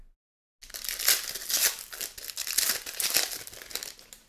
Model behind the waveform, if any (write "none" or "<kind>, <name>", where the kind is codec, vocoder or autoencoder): none